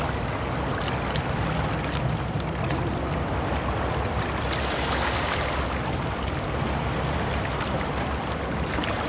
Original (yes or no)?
yes